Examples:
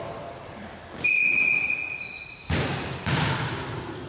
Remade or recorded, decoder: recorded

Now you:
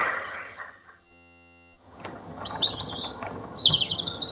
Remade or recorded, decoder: remade, vocoder, HiFi-GAN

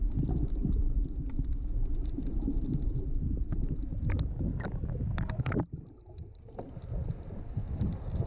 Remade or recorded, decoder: recorded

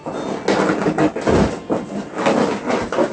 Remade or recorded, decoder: recorded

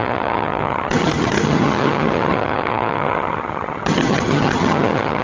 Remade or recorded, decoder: remade, vocoder, HiFi-GAN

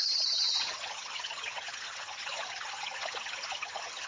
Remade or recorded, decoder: remade, vocoder, HiFi-GAN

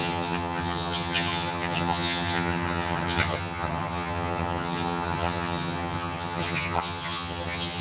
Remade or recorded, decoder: remade, vocoder, HiFi-GAN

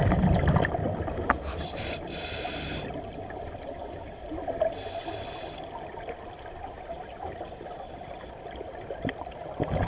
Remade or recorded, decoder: recorded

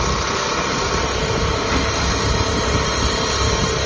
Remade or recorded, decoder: recorded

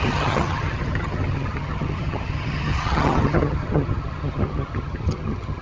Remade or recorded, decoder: remade, vocoder, HiFi-GAN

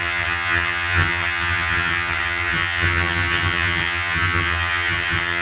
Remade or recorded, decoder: remade, vocoder, HiFi-GAN